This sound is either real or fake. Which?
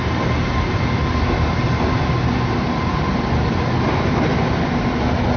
real